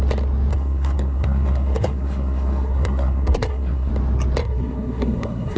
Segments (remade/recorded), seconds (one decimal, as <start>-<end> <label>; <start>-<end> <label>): 0.0-0.5 recorded; 0.5-3.9 remade; 3.9-4.4 recorded; 4.4-5.6 remade